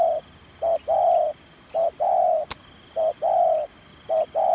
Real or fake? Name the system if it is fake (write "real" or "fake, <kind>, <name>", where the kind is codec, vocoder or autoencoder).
real